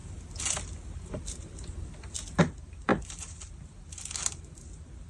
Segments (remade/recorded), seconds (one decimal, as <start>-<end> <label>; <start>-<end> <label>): 0.0-2.9 recorded; 2.9-3.4 remade; 3.4-5.1 recorded